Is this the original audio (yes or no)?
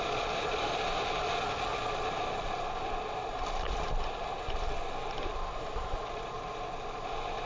yes